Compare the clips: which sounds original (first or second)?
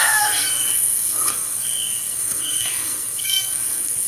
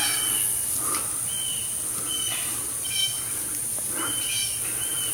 second